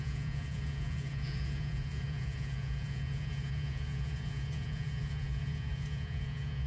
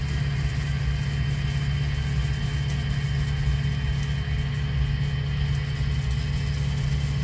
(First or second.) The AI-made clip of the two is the first